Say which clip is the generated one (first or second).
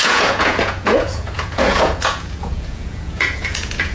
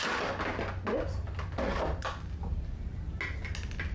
first